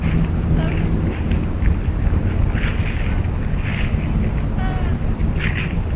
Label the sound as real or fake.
real